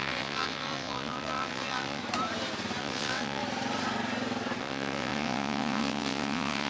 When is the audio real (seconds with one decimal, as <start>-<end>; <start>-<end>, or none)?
2.0-2.8; 3.4-4.6

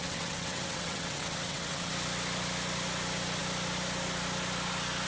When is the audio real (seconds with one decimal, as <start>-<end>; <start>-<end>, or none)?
1.9-5.1

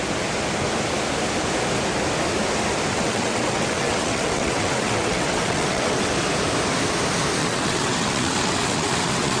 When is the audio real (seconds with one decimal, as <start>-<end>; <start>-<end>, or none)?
0.0-2.9; 6.1-7.4

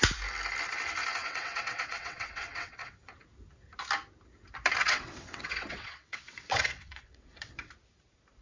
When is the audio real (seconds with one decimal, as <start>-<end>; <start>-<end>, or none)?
0.0-1.2; 3.1-4.8; 7.7-8.4

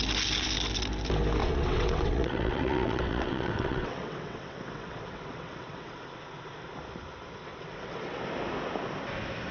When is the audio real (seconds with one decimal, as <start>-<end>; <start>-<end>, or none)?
0.0-1.4; 6.0-7.5; 8.2-9.5

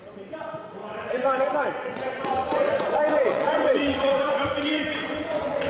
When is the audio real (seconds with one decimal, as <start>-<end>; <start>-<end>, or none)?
none

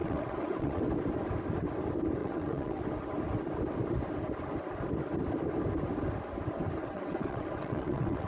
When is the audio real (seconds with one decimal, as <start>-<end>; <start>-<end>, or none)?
0.8-2.2; 2.8-6.8